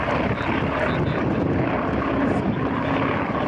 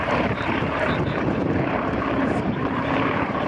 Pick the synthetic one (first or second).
second